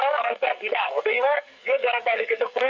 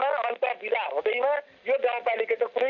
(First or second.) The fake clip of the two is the first